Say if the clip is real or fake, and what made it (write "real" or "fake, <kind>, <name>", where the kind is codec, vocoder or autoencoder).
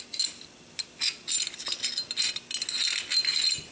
real